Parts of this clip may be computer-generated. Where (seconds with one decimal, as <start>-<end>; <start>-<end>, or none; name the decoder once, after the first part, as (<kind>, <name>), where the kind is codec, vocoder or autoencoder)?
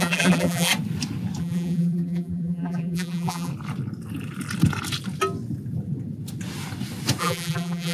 0.0-0.7 (vocoder, BigVGAN v2); 1.4-3.5; 7.2-7.9